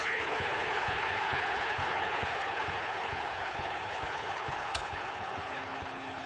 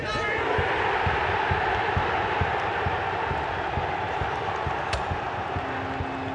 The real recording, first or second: second